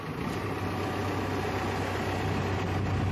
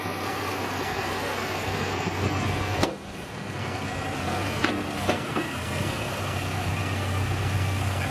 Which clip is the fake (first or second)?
second